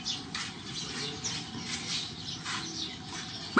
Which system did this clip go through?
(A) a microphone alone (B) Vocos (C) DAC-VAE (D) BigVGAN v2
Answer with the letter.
A